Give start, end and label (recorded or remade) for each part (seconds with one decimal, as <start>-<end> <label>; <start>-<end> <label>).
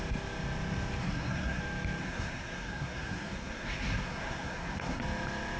0.0-1.0 recorded; 1.0-1.6 remade; 1.6-2.0 recorded; 2.0-5.0 remade; 5.0-5.6 recorded